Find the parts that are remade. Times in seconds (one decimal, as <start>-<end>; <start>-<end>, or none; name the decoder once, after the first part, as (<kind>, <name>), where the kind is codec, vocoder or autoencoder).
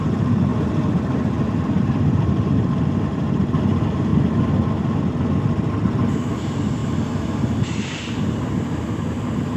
0.0-4.1 (vocoder, BigVGAN v2); 5.4-9.6